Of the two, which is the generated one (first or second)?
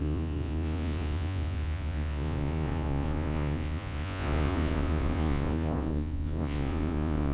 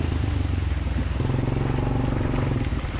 first